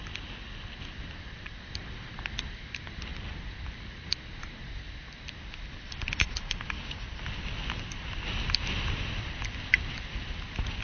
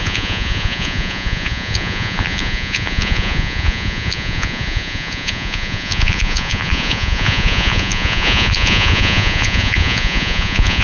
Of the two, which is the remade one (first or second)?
second